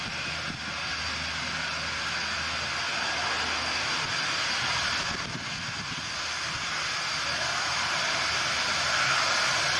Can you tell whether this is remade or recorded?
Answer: recorded